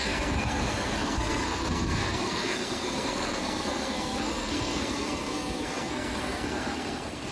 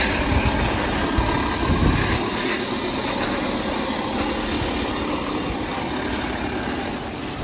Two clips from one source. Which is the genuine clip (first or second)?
second